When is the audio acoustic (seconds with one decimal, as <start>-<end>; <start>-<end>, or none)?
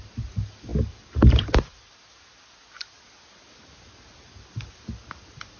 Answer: 0.0-5.6